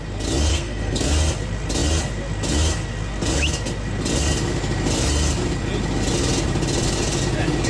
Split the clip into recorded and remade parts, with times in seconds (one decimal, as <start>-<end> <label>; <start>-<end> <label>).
0.0-0.5 recorded; 0.5-1.1 remade; 1.1-7.7 recorded